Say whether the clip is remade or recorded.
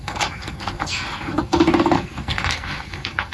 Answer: remade